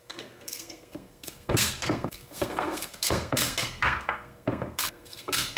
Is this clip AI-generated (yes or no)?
yes